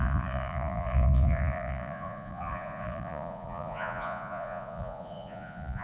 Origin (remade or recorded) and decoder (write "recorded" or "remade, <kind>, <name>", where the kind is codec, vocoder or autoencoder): remade, vocoder, Vocos